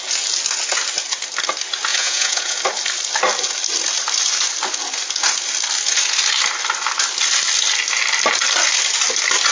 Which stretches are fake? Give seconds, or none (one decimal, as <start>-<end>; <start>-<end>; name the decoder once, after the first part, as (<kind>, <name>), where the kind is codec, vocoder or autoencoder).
1.9-2.6 (vocoder, Vocos)